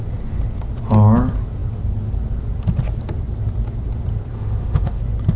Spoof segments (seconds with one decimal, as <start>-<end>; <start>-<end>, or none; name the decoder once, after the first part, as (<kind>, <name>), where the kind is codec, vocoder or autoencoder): 4.3-5.0 (autoencoder, DAC-VAE)